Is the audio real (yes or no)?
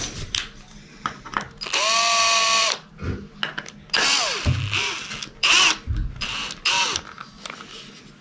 yes